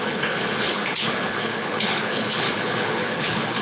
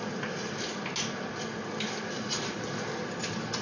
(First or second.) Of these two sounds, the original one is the second